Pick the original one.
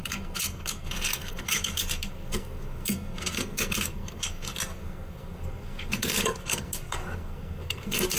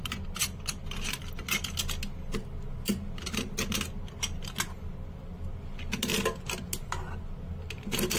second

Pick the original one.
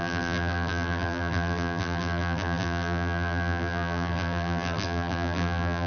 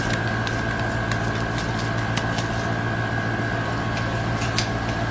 second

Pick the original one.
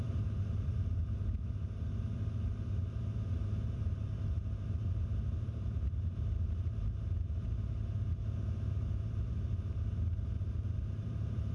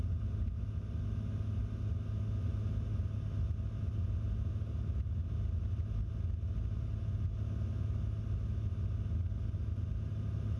second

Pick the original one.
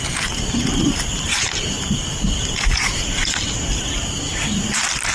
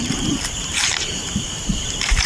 first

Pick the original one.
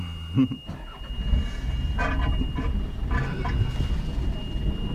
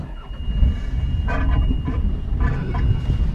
first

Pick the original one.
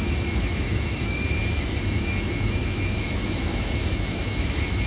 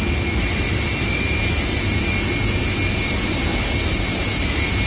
second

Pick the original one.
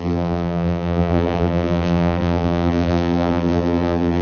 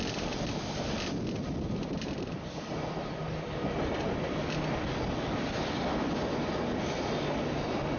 second